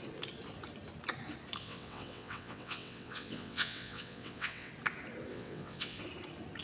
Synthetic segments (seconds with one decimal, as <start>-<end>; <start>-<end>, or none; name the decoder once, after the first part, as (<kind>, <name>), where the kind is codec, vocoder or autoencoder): 1.6-4.7 (vocoder, WaveNeXt); 5.3-6.0